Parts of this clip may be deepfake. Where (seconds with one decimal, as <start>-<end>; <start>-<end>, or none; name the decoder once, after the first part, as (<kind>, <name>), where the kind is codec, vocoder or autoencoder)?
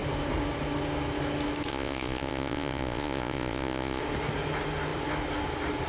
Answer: 1.7-4.0 (vocoder, Vocos)